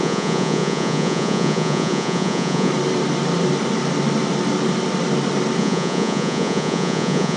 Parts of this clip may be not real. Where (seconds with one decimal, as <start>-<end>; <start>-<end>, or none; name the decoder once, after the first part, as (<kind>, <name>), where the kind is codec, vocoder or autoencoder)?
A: 0.0-2.7 (vocoder, Vocos); 5.6-7.4